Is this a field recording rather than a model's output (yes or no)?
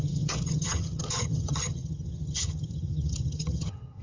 no